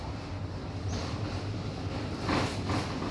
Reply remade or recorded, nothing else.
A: recorded